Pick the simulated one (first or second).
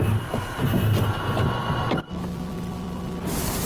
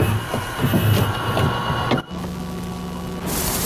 first